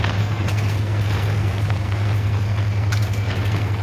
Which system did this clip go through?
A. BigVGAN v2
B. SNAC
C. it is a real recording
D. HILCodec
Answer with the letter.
B